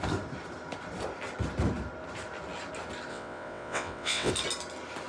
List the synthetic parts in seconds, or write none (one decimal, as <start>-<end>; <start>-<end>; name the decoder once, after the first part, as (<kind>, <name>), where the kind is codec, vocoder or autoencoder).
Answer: 3.1-4.3 (vocoder, WaveNeXt)